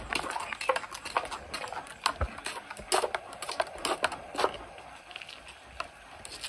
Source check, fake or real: real